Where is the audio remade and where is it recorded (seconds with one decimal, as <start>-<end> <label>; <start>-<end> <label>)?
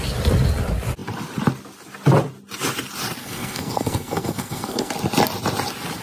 0.0-3.2 recorded; 3.2-4.9 remade; 4.9-6.0 recorded